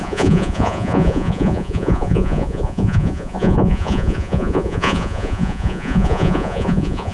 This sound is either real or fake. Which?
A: fake